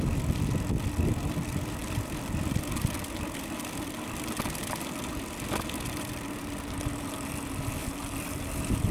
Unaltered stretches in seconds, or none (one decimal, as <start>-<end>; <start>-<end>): 0.0-1.8; 5.1-7.8